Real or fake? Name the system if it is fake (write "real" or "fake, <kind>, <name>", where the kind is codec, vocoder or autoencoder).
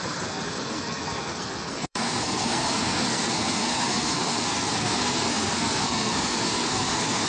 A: fake, codec, SNAC